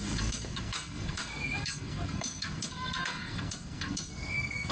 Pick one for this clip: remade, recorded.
remade